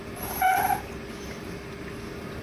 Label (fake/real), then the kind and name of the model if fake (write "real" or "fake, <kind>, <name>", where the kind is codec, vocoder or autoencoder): real